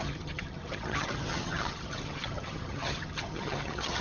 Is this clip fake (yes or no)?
yes